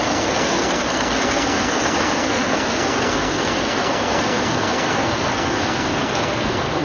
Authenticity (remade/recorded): remade